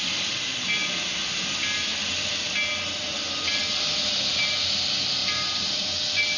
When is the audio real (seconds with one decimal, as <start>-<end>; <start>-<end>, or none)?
0.0-5.2; 5.9-6.4